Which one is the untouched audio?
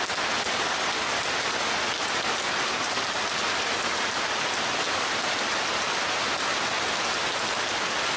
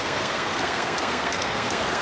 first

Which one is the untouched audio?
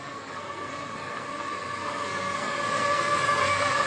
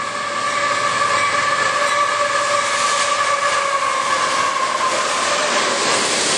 second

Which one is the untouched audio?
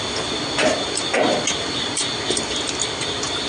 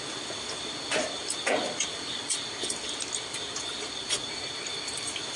first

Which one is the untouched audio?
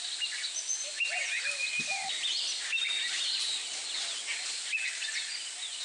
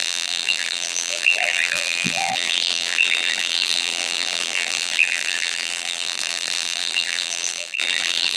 first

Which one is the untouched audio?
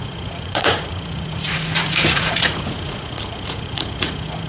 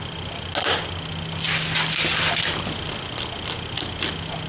second